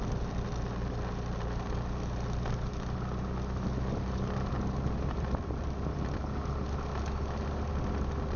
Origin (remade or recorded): recorded